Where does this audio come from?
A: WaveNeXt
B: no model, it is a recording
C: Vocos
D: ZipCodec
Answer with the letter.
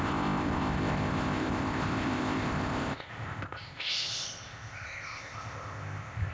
D